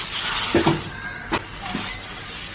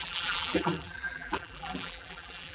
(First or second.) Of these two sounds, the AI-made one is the second